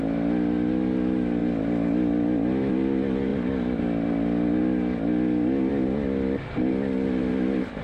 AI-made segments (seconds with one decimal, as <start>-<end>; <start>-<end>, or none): 1.4-2.7; 3.3-3.8; 5.7-6.7